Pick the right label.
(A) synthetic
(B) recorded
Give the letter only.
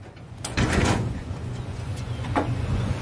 A